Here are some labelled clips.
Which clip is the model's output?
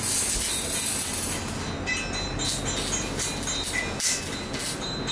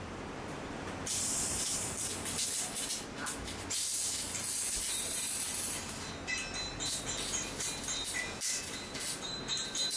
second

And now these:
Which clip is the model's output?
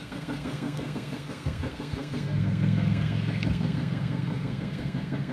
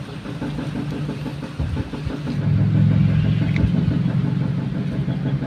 first